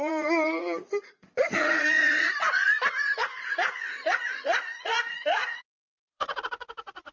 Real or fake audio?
fake